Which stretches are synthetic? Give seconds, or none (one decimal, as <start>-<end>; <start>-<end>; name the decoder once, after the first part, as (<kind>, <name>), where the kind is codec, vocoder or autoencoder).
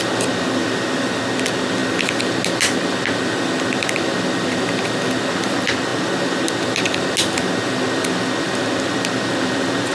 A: none